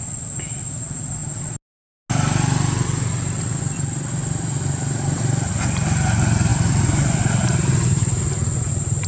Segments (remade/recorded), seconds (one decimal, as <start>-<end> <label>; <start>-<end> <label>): 0.0-9.1 recorded